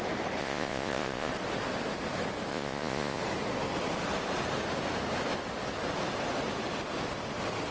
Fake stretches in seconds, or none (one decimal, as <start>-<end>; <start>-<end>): 0.4-1.3; 2.5-3.2